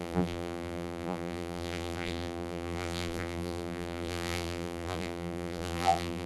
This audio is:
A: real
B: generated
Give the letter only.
B